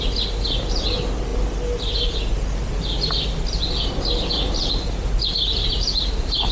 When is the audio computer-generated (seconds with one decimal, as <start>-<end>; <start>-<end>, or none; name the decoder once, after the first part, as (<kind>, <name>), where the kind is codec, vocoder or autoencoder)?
none